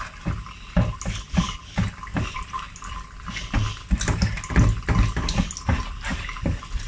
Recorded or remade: recorded